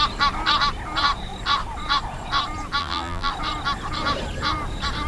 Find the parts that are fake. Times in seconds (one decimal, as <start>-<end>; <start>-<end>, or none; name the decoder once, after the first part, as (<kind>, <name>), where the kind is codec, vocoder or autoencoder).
2.8-3.3 (vocoder, BigVGAN v2)